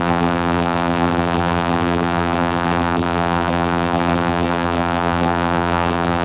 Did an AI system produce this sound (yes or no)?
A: yes